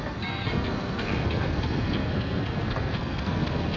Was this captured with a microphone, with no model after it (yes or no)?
no